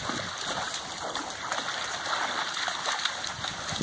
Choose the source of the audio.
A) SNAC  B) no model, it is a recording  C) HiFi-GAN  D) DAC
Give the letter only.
B